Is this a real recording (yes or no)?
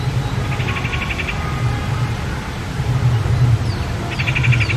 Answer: yes